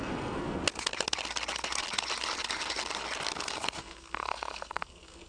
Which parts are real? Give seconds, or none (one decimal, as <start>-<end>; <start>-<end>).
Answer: 0.6-3.8